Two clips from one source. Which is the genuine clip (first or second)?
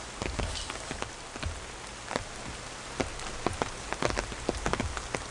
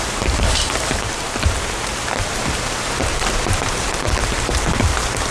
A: first